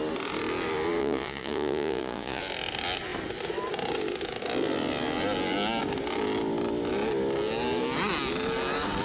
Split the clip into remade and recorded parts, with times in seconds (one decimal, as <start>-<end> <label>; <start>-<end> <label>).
0.0-1.0 recorded; 1.0-2.4 remade; 2.4-9.0 recorded